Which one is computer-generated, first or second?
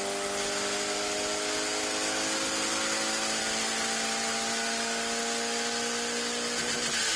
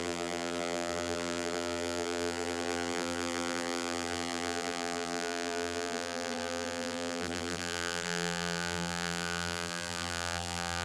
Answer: second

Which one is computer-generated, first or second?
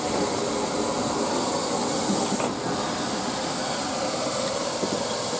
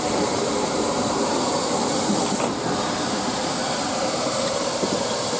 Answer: second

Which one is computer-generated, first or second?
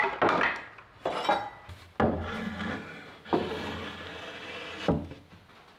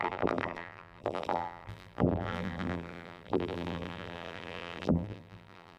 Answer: second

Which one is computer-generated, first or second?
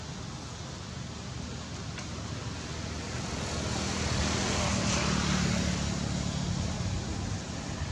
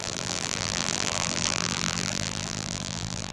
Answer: second